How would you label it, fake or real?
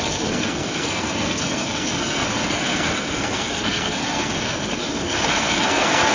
fake